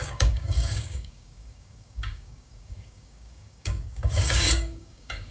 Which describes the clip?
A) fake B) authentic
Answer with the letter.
A